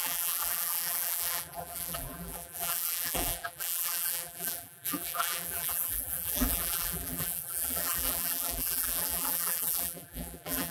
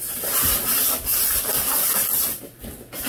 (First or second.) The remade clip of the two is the first